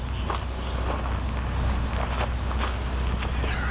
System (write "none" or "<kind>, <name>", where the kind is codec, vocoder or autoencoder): none